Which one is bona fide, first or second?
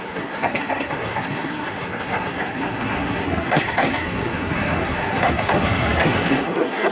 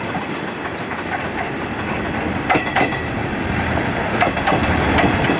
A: second